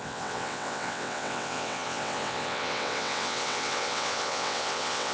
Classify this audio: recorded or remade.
remade